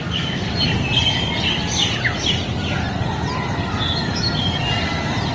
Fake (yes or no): no